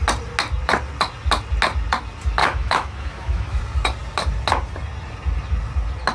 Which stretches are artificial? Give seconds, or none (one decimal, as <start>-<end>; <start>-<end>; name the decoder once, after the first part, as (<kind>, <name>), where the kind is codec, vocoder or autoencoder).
2.4-3.6 (autoencoder, DAC-VAE)